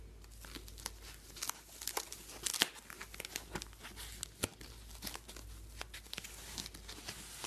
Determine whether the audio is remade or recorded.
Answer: recorded